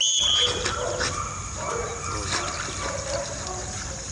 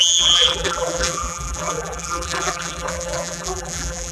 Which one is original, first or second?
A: first